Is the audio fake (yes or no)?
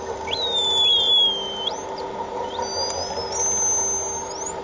no